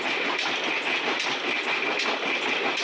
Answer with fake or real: real